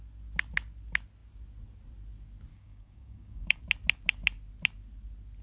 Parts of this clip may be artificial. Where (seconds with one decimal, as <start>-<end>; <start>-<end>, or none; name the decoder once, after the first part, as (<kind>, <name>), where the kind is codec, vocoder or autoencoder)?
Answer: 2.5-3.6 (codec, DAC)